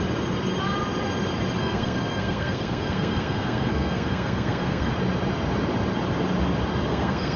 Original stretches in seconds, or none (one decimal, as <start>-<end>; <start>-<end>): 0.0-1.6; 4.9-6.9